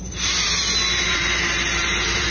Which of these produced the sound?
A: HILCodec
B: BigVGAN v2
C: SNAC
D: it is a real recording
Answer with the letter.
B